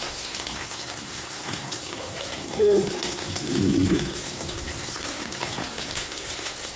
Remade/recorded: remade